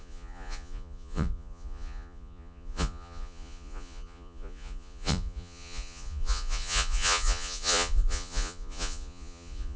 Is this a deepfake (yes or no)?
yes